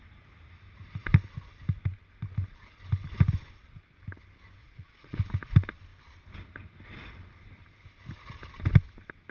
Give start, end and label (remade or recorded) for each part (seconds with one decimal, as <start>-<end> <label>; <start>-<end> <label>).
0.0-4.6 recorded; 4.6-5.2 remade; 5.2-9.3 recorded